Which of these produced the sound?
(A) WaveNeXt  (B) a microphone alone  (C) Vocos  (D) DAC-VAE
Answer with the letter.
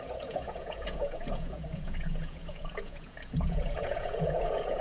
C